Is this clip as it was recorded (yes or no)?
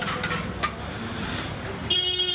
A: yes